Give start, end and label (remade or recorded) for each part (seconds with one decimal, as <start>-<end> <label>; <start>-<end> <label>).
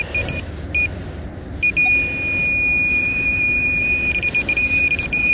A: 0.0-2.9 recorded; 2.9-5.3 remade